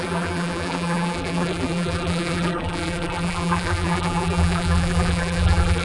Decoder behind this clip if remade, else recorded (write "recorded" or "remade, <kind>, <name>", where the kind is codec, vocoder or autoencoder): remade, vocoder, BigVGAN v2